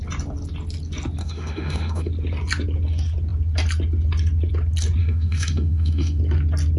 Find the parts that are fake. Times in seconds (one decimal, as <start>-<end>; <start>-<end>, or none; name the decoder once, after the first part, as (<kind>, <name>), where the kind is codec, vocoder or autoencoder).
1.2-2.1 (autoencoder, DAC-VAE); 5.0-6.2